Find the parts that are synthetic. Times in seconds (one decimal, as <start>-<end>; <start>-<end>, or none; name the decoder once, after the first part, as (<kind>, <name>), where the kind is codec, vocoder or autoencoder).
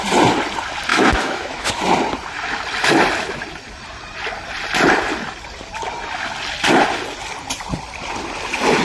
0.9-1.8 (autoencoder, DAC-VAE)